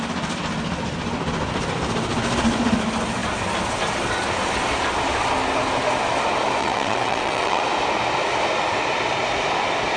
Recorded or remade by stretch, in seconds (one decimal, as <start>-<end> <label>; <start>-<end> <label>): 0.0-6.6 recorded; 6.6-7.6 remade; 7.6-10.0 recorded

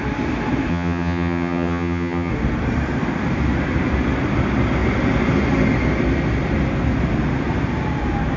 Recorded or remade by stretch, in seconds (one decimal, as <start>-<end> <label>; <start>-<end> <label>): 0.0-0.7 recorded; 0.7-2.3 remade; 2.3-8.4 recorded